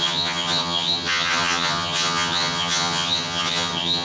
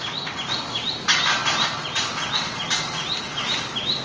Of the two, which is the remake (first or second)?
first